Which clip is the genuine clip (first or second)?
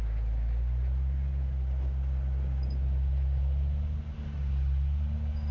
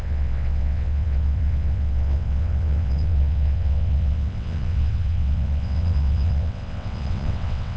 first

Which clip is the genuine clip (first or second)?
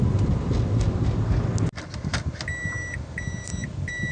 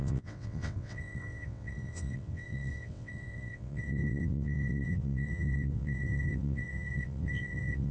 first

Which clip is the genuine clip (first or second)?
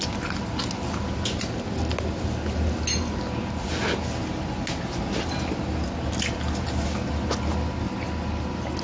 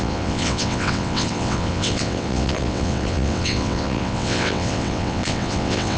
first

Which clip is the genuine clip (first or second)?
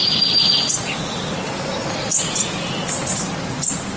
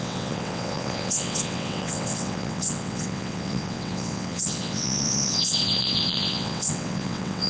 first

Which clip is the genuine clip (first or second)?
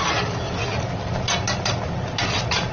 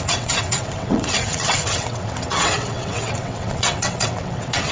first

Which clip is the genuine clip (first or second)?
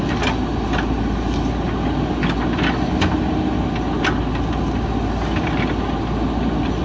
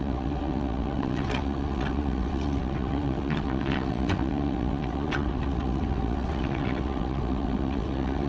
first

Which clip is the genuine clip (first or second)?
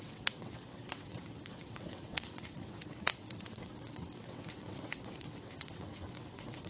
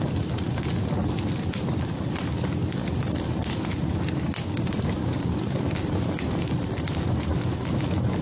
second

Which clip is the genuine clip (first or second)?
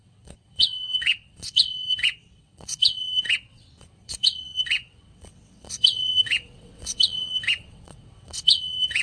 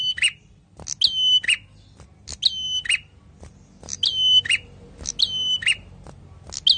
second